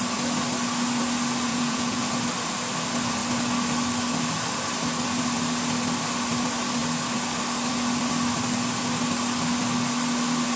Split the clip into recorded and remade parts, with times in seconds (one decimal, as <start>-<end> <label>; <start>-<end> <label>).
0.0-1.5 recorded; 1.5-2.0 remade; 2.0-10.6 recorded